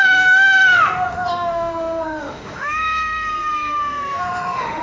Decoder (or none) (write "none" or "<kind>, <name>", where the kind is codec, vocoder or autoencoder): autoencoder, DAC-VAE